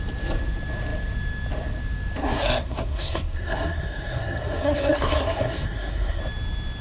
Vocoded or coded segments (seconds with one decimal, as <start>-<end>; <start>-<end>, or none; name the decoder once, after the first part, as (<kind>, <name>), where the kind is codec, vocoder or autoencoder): 2.2-6.2 (codec, SNAC)